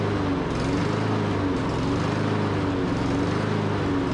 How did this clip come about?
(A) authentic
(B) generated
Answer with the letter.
A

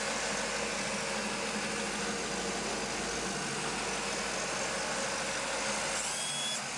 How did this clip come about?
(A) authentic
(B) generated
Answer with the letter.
A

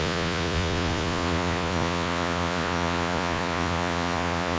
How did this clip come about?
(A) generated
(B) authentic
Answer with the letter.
A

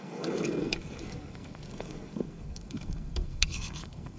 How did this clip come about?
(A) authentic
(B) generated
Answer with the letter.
B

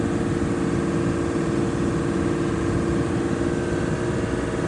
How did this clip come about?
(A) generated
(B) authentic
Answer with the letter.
B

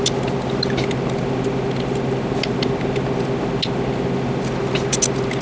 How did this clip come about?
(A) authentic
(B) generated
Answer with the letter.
A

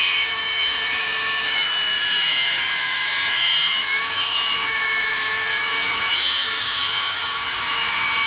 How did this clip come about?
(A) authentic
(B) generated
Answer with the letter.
B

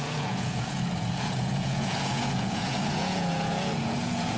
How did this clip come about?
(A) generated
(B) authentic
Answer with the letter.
A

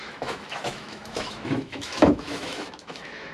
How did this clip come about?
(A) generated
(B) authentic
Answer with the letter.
A